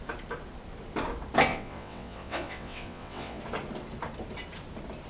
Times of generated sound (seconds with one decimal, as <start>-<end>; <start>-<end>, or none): 1.5-3.4